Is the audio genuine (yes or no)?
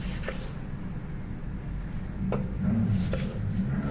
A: yes